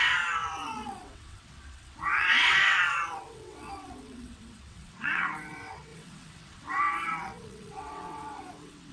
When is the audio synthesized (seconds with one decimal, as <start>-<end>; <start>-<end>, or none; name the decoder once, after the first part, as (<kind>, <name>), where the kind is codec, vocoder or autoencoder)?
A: 0.0-8.9 (vocoder, WaveNeXt)